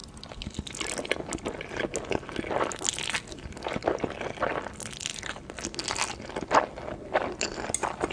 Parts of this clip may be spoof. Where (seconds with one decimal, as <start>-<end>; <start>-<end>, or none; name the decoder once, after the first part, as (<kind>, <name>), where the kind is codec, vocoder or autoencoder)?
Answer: none

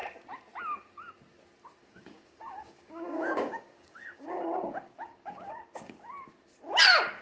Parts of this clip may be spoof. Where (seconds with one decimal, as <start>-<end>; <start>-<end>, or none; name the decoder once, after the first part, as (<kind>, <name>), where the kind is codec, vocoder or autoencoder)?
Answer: 1.8-6.1 (codec, DAC)

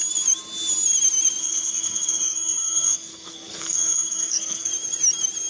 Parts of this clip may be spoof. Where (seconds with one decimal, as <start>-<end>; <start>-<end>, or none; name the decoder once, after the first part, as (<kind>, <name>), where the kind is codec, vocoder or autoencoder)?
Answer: 1.4-4.7 (codec, SNAC)